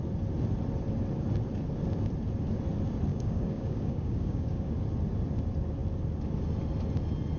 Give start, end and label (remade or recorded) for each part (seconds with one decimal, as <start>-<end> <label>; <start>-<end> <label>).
0.0-3.1 recorded; 3.1-4.7 remade; 4.7-7.4 recorded